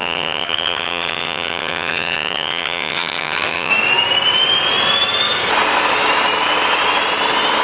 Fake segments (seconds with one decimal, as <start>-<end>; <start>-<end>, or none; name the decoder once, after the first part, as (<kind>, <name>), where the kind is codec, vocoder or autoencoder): 0.0-3.7 (vocoder, HiFi-GAN)